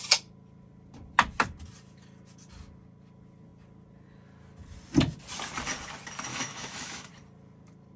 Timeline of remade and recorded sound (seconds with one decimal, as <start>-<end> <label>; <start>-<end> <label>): 0.0-6.3 recorded; 6.3-7.1 remade; 7.1-8.0 recorded